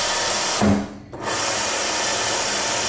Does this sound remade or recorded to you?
recorded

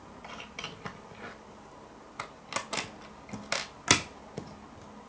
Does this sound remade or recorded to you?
recorded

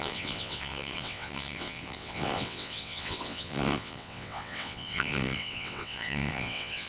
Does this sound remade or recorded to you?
remade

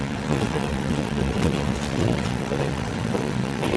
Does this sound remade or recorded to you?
remade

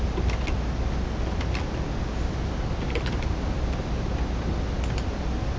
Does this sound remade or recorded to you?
recorded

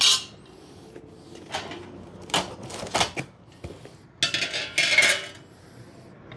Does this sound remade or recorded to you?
recorded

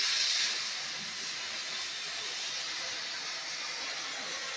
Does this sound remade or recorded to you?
recorded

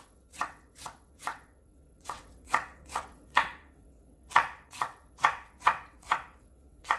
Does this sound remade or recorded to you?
remade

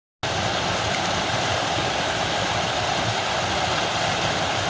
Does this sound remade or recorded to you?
recorded